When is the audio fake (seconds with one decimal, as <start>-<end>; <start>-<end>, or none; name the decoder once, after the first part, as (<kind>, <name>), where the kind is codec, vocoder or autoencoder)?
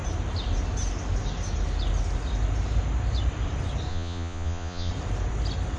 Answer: 3.9-4.9 (vocoder, Vocos)